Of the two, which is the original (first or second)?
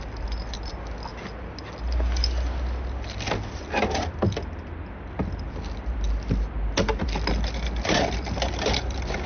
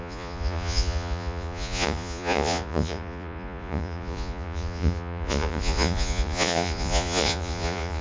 first